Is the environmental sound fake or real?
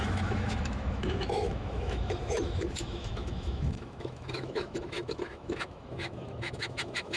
fake